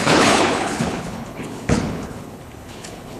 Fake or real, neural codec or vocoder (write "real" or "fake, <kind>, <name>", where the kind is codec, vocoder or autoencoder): fake, codec, HILCodec